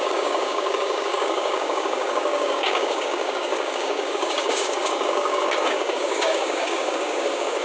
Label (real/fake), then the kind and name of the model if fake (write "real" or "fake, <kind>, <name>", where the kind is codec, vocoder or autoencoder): fake, codec, DAC